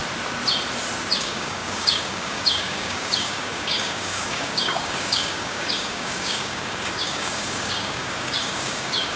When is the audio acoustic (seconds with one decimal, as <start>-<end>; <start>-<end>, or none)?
0.0-1.1